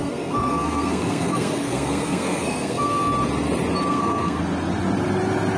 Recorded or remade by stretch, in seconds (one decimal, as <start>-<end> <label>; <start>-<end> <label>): 0.0-3.1 remade; 3.1-3.9 recorded; 3.9-4.4 remade; 4.4-5.6 recorded